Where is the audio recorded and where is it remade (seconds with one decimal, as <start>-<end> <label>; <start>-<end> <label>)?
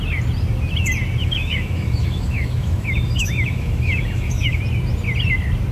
0.0-1.2 recorded; 1.2-4.6 remade; 4.6-5.7 recorded